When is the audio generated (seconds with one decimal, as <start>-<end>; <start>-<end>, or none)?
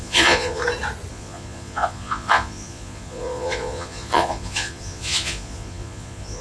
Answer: 0.0-0.6; 1.1-6.4